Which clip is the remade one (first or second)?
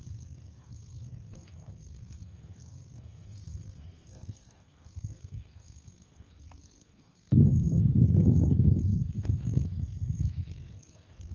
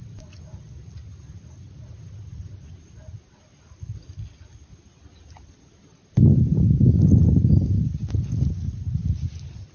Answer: first